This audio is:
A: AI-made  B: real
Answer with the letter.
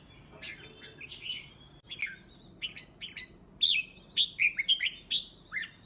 B